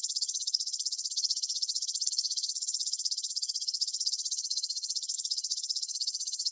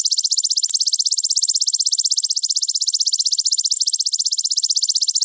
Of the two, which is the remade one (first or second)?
first